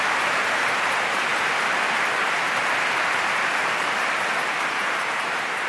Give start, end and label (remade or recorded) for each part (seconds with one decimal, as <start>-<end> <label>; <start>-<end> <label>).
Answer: 0.0-1.3 remade; 1.3-4.7 recorded; 4.7-5.7 remade